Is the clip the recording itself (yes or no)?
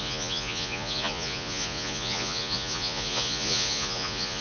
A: no